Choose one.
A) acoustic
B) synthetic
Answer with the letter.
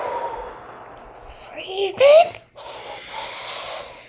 A